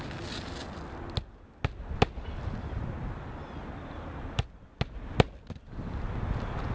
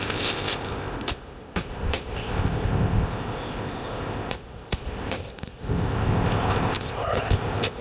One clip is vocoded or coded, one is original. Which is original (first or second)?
first